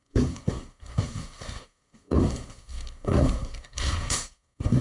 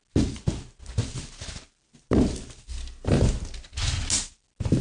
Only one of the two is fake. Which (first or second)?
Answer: first